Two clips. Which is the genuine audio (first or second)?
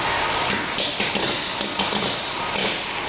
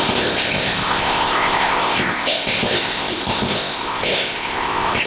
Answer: first